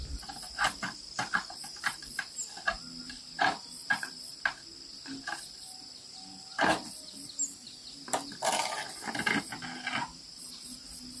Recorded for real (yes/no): yes